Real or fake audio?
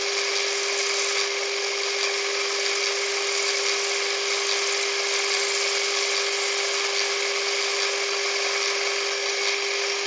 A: real